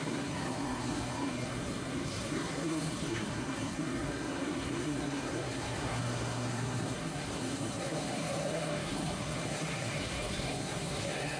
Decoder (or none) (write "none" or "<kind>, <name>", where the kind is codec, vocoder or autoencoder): codec, SNAC